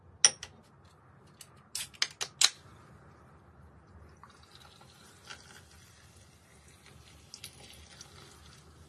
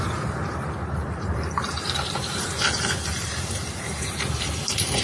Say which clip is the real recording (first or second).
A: first